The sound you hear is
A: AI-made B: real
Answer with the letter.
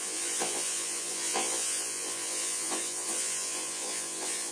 A